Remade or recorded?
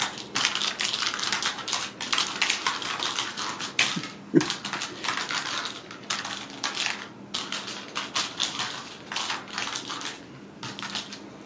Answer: recorded